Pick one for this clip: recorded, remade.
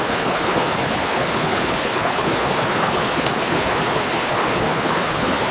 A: remade